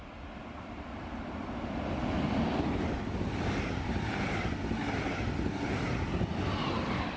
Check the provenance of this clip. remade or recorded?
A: recorded